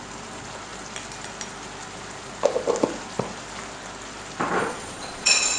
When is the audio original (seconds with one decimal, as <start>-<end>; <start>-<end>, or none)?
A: 0.0-4.6

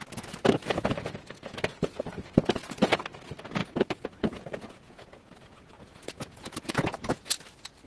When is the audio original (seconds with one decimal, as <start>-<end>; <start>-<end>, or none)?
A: 0.0-0.6; 3.0-3.6; 7.4-7.9

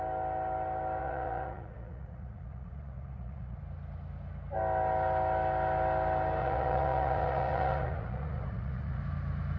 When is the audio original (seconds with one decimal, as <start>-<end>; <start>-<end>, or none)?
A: 0.0-1.0; 3.6-6.4; 9.0-9.6

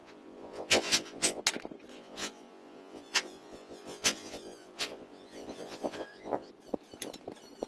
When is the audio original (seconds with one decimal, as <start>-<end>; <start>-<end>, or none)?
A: 1.4-1.9; 6.5-7.7

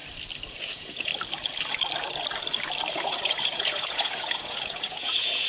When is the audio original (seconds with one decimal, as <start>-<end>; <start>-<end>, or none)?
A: 0.0-0.5; 1.1-2.9

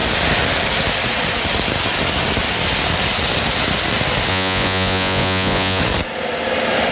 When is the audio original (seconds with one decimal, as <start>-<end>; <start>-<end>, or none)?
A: 0.0-4.3; 5.8-6.9

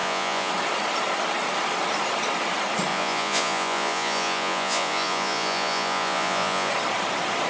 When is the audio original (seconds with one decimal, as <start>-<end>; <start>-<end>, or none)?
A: 0.5-2.9; 6.7-7.5